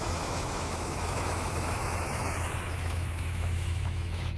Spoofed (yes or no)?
yes